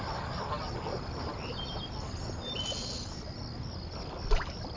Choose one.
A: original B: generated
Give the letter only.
A